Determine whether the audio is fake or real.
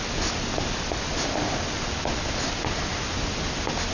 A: real